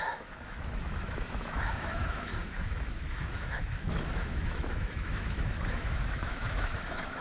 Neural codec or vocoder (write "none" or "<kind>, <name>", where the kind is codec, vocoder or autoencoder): autoencoder, DAC-VAE